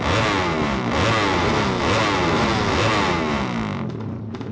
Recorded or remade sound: recorded